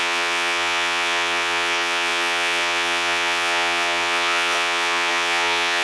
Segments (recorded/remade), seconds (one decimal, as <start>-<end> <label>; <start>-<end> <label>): 0.0-5.8 remade